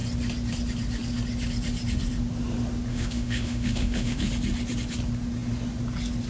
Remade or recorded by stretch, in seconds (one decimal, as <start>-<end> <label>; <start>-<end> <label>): 0.0-2.9 recorded; 2.9-4.3 remade; 4.3-6.3 recorded